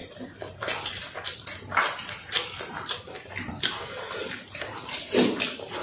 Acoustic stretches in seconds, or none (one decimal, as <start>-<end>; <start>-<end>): 0.0-5.8

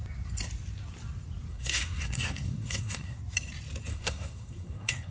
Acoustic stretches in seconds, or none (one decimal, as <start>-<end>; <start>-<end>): 0.0-1.5; 3.2-3.9

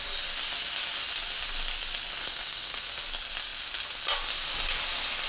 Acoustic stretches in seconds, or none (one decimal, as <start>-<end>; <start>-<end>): 0.0-2.2; 2.9-5.3

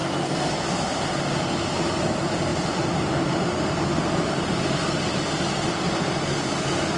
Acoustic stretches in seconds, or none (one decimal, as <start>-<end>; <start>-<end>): 0.5-7.0

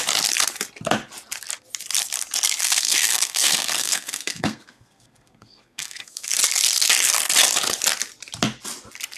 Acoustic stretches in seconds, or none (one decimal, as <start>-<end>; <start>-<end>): 0.0-2.6; 6.3-9.2

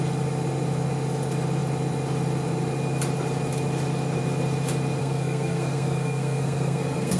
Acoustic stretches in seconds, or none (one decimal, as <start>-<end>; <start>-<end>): 0.0-5.0

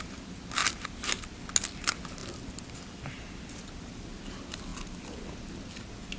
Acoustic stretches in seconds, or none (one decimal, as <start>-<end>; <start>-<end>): 0.0-6.2

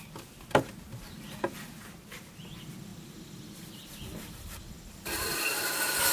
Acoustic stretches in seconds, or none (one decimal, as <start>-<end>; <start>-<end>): 0.0-6.1